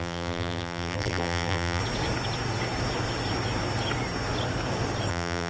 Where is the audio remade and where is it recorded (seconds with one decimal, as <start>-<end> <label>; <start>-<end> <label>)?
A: 0.0-1.8 remade; 1.8-5.1 recorded; 5.1-5.5 remade